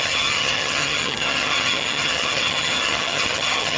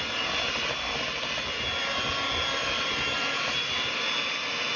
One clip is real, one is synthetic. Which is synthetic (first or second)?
first